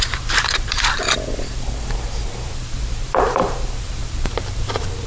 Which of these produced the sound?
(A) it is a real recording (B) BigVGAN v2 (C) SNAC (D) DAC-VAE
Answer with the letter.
B